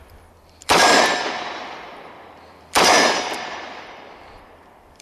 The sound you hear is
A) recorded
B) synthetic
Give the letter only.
B